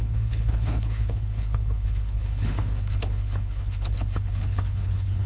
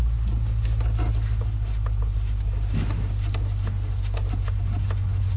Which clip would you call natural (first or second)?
second